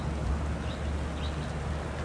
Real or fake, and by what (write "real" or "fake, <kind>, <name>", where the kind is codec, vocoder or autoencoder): real